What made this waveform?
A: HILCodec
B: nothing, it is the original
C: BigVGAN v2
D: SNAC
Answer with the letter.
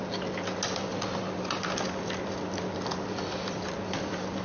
B